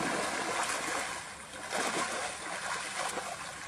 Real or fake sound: real